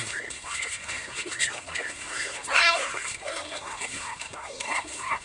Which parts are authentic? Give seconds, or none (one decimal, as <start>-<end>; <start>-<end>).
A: none